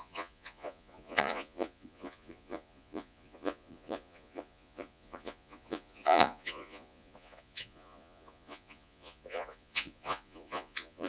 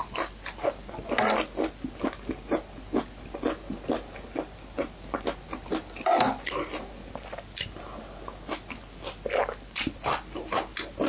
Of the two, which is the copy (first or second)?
first